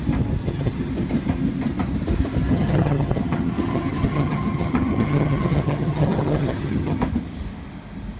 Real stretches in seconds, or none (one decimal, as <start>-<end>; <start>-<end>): 0.0-0.4; 0.9-2.5; 7.0-8.2